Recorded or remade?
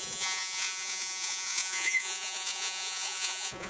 remade